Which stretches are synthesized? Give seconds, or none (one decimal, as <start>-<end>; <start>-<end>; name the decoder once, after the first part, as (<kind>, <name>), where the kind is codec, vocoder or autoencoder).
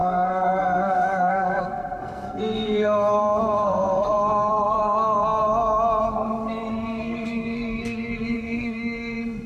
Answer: 0.0-5.2 (codec, SNAC); 6.0-9.5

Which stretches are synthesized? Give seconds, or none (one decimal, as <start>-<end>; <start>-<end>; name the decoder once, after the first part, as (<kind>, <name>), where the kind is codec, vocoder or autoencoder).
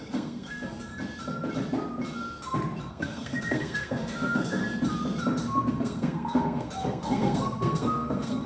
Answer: 0.0-0.9 (codec, SNAC); 2.9-4.6; 5.7-8.5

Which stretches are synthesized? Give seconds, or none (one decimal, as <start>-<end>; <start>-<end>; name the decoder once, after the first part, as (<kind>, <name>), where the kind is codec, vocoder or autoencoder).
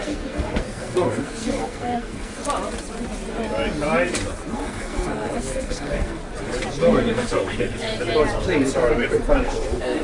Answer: 0.0-2.4 (codec, SNAC); 4.5-6.2; 6.8-7.9; 9.4-10.0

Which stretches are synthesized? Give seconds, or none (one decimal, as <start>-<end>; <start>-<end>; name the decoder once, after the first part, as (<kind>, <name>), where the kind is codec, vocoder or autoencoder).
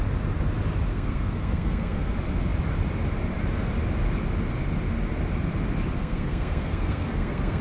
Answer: 0.9-2.1 (codec, SNAC); 6.0-7.6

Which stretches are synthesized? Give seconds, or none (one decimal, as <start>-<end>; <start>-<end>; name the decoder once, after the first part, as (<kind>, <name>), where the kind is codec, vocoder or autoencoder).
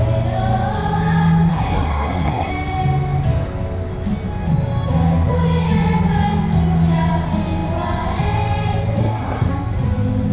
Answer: 1.5-2.5 (codec, SNAC); 9.0-9.5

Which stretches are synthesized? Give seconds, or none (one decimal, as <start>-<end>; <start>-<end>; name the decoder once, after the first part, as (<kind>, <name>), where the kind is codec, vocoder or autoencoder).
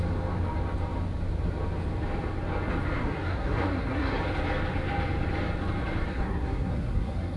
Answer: 3.0-4.2 (codec, SNAC); 6.1-7.4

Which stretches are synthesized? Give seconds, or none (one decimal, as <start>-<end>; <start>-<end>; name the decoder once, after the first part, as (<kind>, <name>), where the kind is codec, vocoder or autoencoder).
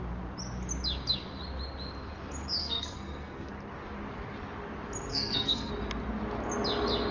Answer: 2.6-3.5 (codec, SNAC); 5.1-5.7